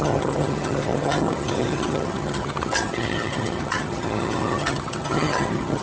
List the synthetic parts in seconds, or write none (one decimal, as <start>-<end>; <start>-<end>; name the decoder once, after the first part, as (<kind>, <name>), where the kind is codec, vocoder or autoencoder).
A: 0.0-5.8 (vocoder, HiFi-GAN)